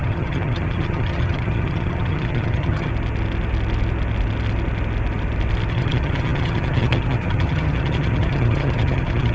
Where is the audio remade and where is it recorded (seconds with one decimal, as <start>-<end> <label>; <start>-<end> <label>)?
0.0-2.9 remade; 2.9-5.7 recorded; 5.7-9.3 remade